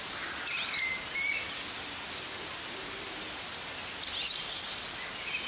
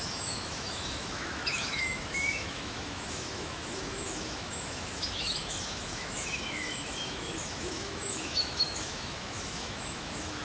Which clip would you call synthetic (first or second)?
second